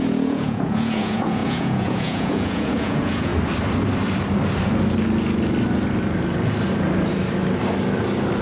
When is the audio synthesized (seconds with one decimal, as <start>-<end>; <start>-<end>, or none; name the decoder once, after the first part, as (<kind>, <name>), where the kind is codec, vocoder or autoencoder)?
0.0-3.3 (vocoder, Vocos)